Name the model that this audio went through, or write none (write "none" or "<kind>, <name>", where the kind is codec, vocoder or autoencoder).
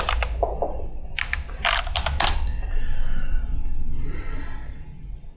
none